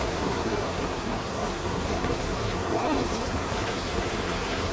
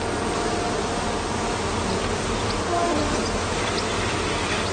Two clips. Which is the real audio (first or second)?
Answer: second